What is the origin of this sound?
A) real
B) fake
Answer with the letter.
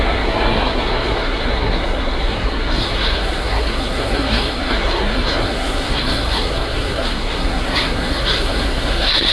B